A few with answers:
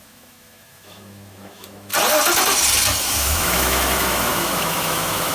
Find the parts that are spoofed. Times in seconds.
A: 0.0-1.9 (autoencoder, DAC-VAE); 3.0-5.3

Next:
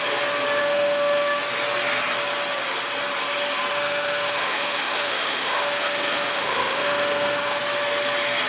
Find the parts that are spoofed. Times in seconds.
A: 0.6-1.4 (autoencoder, DAC-VAE); 3.7-7.6